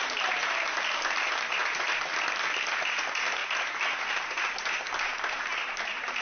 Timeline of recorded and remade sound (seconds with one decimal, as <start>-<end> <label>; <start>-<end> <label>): 0.0-6.2 recorded